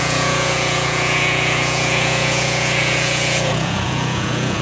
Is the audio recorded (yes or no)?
no